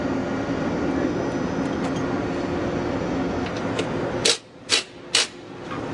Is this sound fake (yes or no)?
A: no